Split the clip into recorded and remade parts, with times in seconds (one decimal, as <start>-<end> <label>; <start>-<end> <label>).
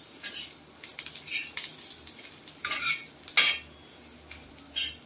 0.0-5.1 recorded